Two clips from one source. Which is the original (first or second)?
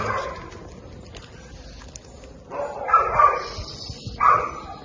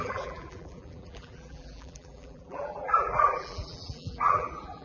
first